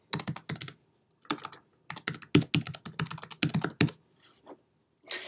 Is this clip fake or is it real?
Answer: real